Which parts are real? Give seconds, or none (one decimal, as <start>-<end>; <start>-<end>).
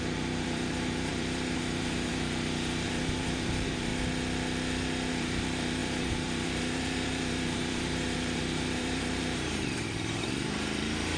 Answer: 3.9-5.1